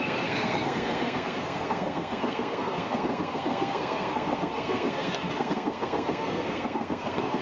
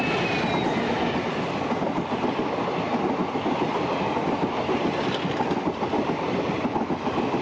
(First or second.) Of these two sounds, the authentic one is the second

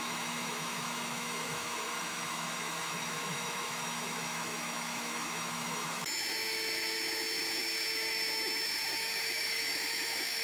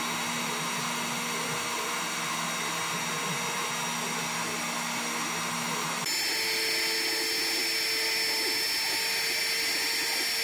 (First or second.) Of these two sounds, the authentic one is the second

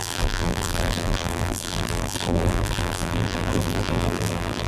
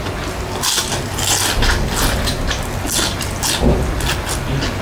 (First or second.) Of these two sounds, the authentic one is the second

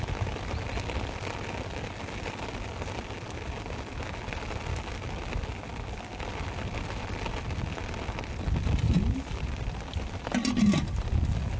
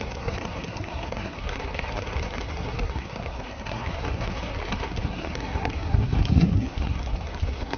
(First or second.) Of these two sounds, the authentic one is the first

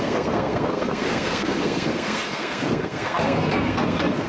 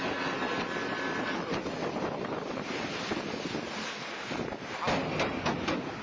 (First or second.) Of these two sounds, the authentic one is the second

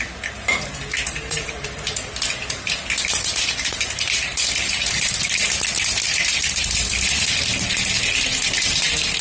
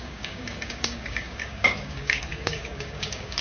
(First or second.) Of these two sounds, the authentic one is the first